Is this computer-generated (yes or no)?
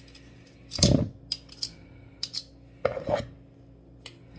no